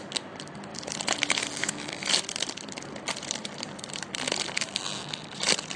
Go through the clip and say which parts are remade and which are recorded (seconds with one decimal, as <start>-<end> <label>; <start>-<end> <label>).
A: 0.0-0.7 recorded; 0.7-4.2 remade; 4.2-5.8 recorded